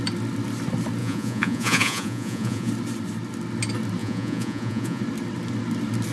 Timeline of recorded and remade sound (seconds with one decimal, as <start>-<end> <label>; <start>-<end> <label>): 0.0-1.0 recorded; 1.0-2.7 remade; 2.7-4.0 recorded; 4.0-5.0 remade; 5.0-6.1 recorded